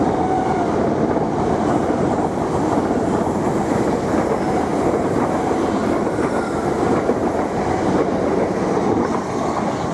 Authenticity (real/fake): real